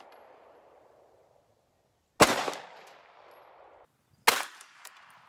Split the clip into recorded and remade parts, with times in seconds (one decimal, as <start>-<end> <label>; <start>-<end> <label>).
0.0-1.2 remade; 1.2-4.4 recorded; 4.4-5.3 remade